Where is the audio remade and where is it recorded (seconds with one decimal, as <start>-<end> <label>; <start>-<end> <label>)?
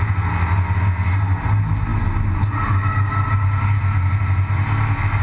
0.0-5.2 recorded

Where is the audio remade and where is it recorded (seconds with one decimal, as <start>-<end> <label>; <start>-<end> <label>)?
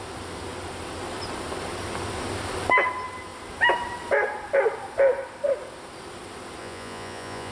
0.0-6.6 recorded; 6.6-7.5 remade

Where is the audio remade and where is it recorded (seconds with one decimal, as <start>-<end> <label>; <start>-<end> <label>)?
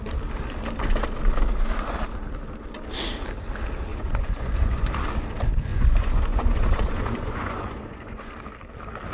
0.0-3.9 recorded; 3.9-4.9 remade; 4.9-5.7 recorded; 5.7-8.3 remade; 8.3-9.1 recorded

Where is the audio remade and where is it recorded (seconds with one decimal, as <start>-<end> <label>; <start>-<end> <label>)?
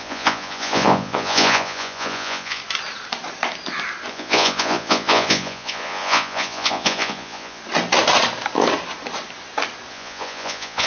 0.0-2.6 remade; 2.6-4.1 recorded; 4.1-7.6 remade; 7.6-9.9 recorded; 9.9-10.9 remade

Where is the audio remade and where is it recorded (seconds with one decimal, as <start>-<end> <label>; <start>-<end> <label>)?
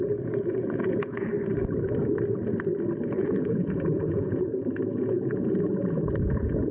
0.0-1.3 remade; 1.3-3.1 recorded; 3.1-6.7 remade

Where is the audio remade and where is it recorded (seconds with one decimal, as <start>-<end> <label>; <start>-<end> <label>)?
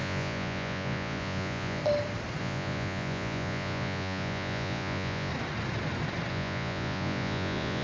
0.0-1.8 remade; 1.8-2.4 recorded; 2.4-5.3 remade; 5.3-6.3 recorded; 6.3-7.8 remade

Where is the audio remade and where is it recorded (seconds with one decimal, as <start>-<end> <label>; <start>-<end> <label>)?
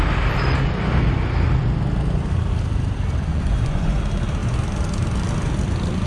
0.0-3.3 recorded; 3.3-4.0 remade; 4.0-6.1 recorded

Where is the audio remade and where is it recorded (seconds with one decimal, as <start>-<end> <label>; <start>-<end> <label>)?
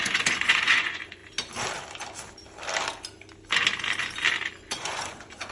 0.0-1.2 remade; 1.2-4.5 recorded; 4.5-5.5 remade